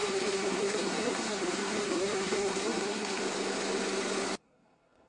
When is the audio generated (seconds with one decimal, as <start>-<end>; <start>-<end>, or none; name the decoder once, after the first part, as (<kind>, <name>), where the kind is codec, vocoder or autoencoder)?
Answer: 0.0-3.2 (codec, SNAC); 4.4-5.1